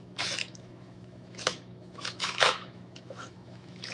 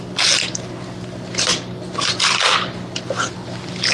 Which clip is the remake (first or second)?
first